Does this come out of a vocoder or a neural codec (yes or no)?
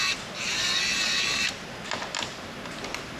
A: no